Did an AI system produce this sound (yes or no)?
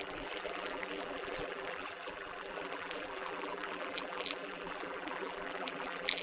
yes